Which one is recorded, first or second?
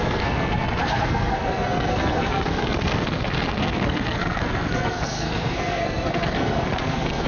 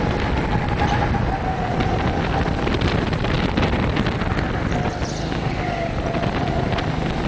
second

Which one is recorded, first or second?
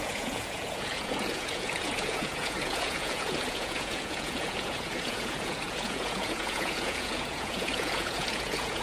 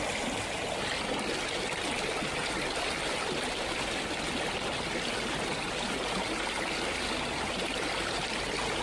second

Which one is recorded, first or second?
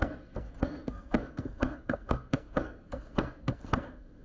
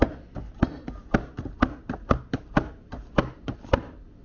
second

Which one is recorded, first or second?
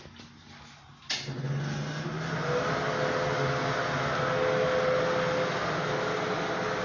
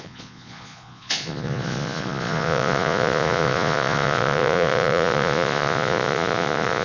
first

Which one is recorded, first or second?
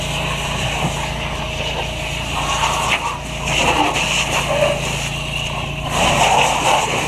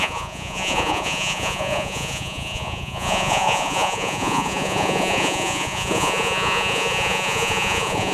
first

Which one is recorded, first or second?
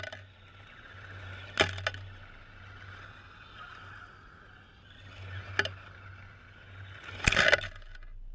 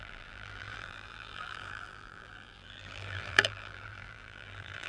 first